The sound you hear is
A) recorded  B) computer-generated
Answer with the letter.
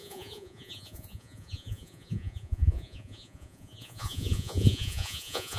B